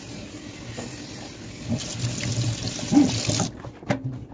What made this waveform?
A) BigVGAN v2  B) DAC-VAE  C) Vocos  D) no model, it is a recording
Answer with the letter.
D